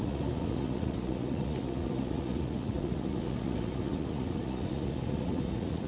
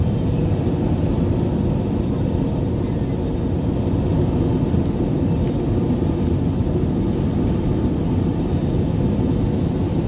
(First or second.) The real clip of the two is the second